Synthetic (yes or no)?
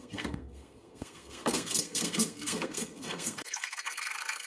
yes